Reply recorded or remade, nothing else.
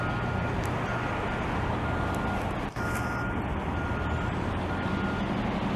recorded